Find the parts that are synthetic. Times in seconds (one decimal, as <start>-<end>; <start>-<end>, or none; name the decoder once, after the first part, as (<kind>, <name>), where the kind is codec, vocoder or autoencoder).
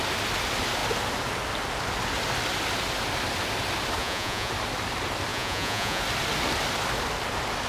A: 4.0-4.5 (vocoder, Vocos); 5.3-6.0